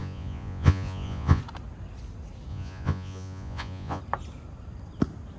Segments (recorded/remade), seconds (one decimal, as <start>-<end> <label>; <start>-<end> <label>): 0.0-1.4 remade; 1.4-2.5 recorded; 2.5-4.0 remade; 4.0-5.4 recorded